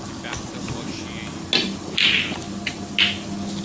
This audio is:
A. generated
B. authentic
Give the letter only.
B